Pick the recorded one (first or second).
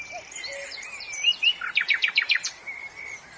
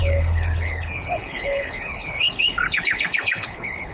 first